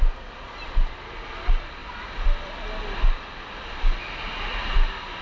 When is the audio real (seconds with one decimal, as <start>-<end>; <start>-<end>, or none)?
0.0-5.2